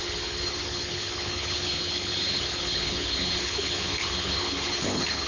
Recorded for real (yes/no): no